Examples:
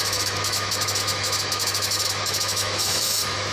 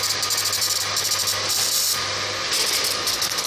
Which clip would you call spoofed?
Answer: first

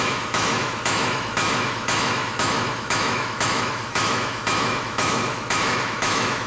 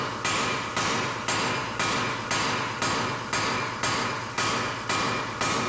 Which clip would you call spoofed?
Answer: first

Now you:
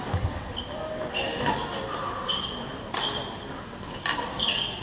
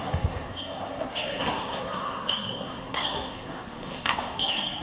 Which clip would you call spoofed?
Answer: second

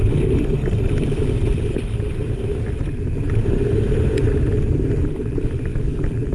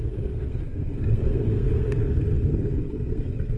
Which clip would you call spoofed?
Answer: second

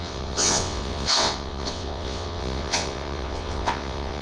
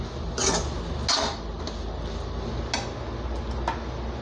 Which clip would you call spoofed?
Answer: first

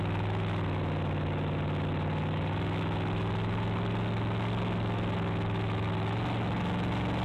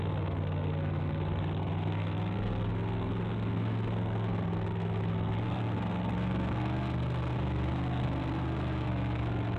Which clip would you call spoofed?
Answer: second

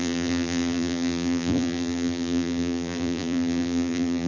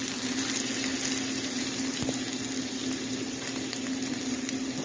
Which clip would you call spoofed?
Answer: first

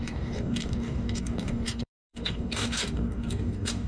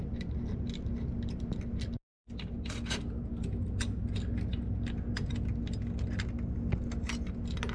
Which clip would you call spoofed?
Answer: first